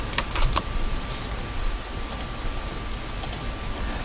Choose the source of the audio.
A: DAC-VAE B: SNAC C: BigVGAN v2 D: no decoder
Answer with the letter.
D